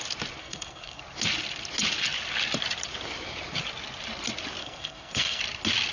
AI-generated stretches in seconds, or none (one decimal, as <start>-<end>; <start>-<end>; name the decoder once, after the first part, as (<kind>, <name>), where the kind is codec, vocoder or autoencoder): 0.4-1.0 (codec, SNAC); 4.6-5.4